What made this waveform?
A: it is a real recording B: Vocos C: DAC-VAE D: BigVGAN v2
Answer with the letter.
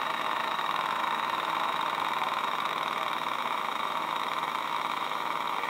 C